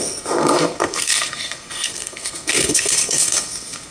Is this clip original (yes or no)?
no